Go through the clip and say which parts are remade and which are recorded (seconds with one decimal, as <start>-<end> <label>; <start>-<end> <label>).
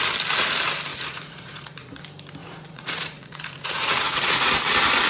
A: 0.0-0.9 recorded; 0.9-2.0 remade; 2.0-2.4 recorded; 2.4-4.5 remade; 4.5-5.1 recorded